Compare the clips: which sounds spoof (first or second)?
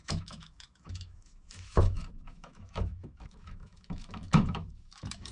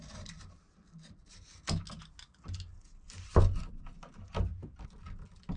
first